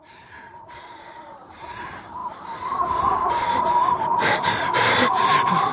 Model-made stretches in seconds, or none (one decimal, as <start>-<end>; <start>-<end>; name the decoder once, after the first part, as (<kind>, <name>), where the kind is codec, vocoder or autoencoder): 0.0-2.2 (vocoder, BigVGAN v2); 3.3-4.1; 4.7-5.7